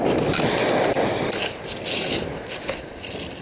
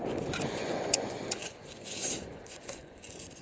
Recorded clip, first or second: first